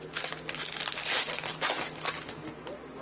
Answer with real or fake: real